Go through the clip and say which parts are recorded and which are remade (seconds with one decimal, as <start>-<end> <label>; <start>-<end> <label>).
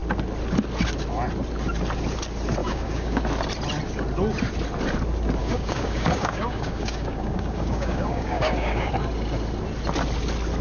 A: 0.0-2.6 recorded; 2.6-3.2 remade; 3.2-5.4 recorded; 5.4-8.9 remade; 8.9-10.6 recorded